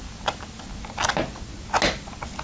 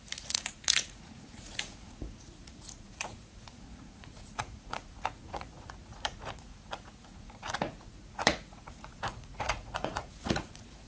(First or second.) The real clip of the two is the first